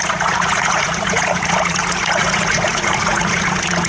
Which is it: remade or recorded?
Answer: remade